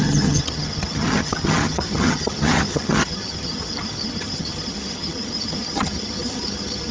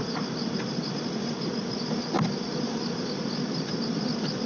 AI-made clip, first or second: first